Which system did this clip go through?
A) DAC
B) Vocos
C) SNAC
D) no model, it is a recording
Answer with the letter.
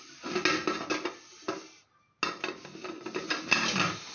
D